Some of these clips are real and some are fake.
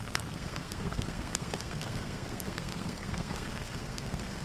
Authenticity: fake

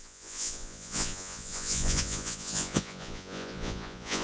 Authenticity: fake